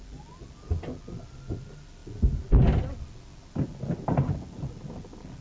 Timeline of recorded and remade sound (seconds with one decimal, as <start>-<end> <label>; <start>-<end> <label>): 0.0-5.4 recorded